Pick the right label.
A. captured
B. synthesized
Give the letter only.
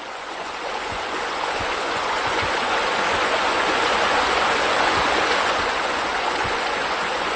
B